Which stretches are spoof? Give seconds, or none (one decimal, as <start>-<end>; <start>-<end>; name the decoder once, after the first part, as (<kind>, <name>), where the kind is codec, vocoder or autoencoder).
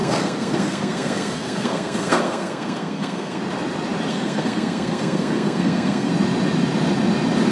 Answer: 0.0-3.4 (codec, SNAC); 4.1-6.1